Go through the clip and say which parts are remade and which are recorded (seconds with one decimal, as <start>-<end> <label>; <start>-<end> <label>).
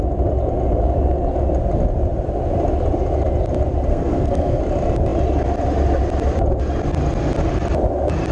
0.0-3.9 recorded; 3.9-4.6 remade; 4.6-8.3 recorded